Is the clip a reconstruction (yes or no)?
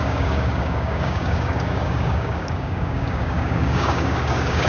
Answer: yes